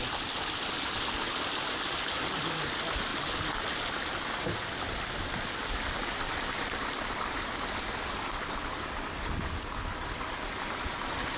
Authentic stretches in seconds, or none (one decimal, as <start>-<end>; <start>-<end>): 0.0-11.4